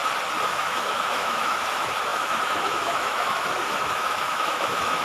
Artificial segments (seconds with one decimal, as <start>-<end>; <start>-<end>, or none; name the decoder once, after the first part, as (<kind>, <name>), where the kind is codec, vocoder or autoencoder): 0.5-5.0 (autoencoder, DAC-VAE)